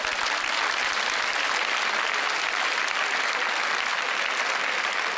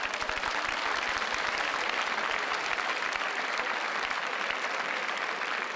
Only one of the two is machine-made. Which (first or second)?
second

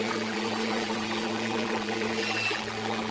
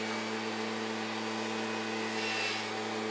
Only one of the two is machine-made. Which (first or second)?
first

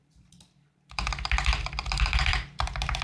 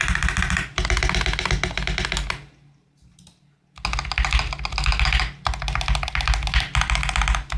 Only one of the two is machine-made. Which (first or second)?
first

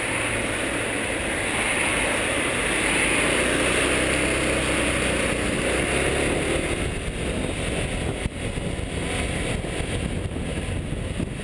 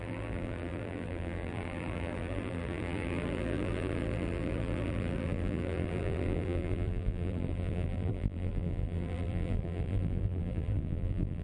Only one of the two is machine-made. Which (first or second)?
second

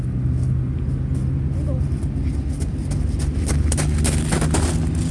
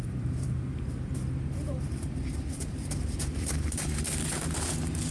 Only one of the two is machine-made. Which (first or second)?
second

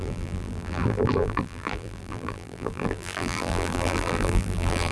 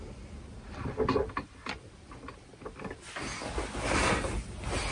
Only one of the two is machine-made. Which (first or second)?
first